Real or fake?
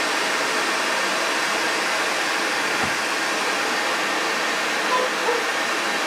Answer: real